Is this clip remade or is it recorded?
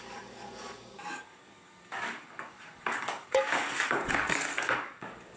remade